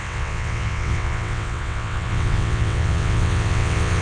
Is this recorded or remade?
remade